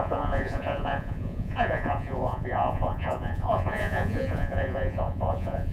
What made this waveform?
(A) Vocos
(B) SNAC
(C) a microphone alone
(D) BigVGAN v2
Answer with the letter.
A